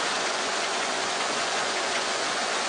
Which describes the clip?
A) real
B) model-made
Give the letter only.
B